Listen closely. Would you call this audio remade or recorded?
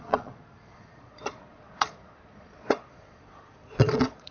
remade